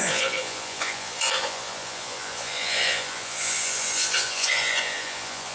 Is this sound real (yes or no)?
no